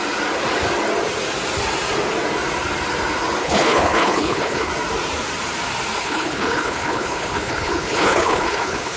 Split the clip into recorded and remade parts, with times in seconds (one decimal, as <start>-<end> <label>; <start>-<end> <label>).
0.0-3.4 recorded; 3.4-4.7 remade; 4.7-6.0 recorded; 6.0-9.0 remade